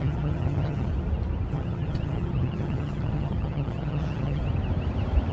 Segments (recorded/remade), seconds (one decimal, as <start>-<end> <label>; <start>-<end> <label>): 0.0-0.9 remade; 0.9-1.5 recorded; 1.5-4.4 remade; 4.4-5.3 recorded